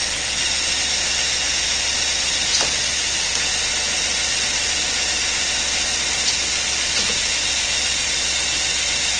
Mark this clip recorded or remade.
recorded